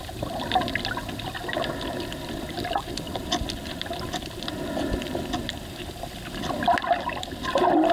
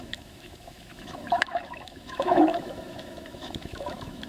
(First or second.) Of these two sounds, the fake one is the second